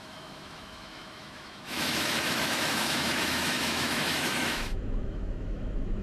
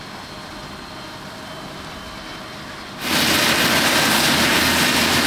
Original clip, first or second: second